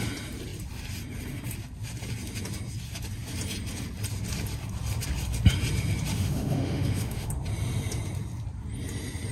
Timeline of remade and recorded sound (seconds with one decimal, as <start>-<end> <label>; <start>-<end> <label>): 0.0-6.1 recorded; 6.1-7.3 remade; 7.3-9.3 recorded